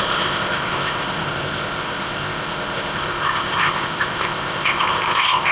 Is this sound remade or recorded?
remade